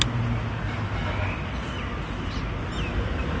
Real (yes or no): yes